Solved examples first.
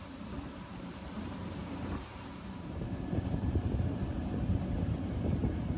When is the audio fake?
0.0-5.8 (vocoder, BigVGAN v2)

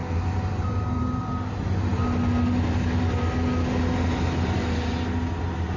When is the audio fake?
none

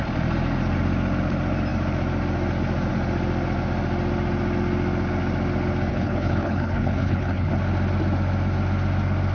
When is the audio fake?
5.9-7.5 (codec, HILCodec)

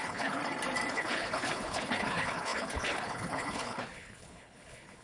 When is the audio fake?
0.0-0.4 (codec, HILCodec); 0.9-5.0

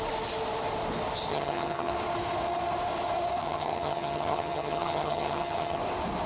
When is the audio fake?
1.3-1.9 (vocoder, HiFi-GAN); 3.4-5.8

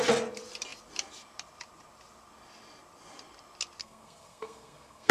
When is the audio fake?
3.8-5.1 (codec, SNAC)